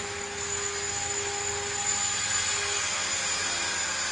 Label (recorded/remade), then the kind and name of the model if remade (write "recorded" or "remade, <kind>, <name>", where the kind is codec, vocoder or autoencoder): recorded